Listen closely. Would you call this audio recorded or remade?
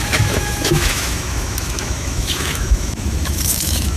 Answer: remade